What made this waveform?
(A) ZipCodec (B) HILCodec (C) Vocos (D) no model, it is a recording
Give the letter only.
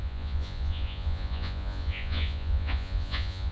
C